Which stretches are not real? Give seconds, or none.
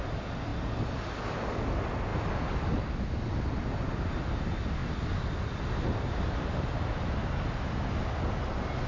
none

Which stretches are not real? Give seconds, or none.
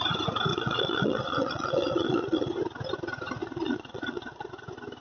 0.5-2.5 (vocoder, Vocos); 3.4-4.5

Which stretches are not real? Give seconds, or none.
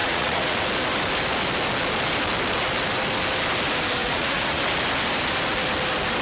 0.0-0.6 (vocoder, Vocos); 4.0-4.6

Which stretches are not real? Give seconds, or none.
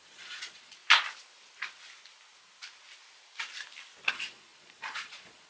0.0-0.8 (vocoder, Vocos); 4.1-5.5